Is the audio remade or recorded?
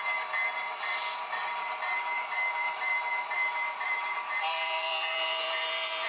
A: remade